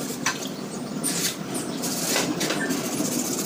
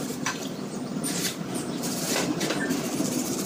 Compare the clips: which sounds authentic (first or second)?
first